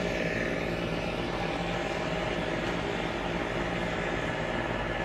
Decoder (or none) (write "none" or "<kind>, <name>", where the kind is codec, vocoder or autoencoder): none